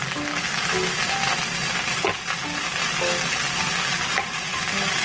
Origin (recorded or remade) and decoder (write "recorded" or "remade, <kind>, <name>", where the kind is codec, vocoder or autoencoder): recorded